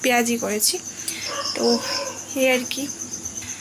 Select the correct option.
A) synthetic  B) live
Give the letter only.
B